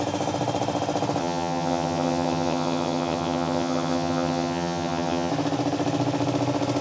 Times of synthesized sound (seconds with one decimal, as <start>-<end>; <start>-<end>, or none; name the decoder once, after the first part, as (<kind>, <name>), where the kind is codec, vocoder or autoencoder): 1.2-5.3 (vocoder, HiFi-GAN)